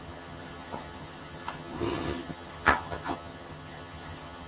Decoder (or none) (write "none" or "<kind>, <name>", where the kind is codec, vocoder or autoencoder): vocoder, HiFi-GAN